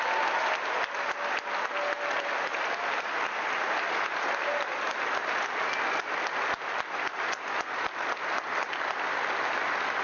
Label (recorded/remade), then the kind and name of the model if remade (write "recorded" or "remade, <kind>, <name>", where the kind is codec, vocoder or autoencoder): recorded